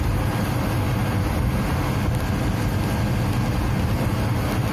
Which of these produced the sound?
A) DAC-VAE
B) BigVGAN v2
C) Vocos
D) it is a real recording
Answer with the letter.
D